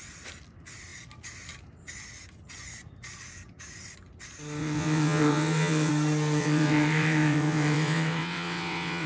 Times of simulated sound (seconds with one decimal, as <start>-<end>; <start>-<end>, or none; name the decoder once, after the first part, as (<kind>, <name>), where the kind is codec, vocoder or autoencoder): 4.6-5.9 (vocoder, WaveNeXt); 6.4-9.1